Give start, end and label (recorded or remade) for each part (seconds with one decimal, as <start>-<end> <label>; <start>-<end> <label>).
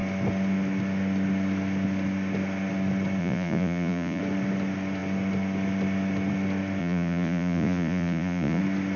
0.0-3.2 recorded; 3.2-4.2 remade; 4.2-6.8 recorded; 6.8-8.6 remade; 8.6-9.0 recorded